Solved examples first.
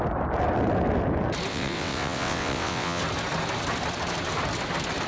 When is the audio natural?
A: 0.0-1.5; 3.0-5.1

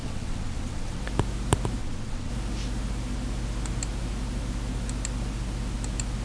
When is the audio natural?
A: 1.0-1.8; 2.3-6.2

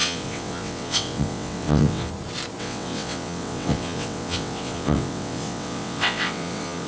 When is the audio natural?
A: 2.1-2.6

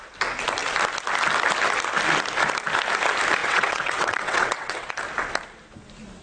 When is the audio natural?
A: 0.0-3.4; 4.9-6.2

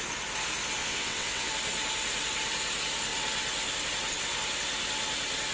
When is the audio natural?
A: 0.0-0.8; 1.5-5.5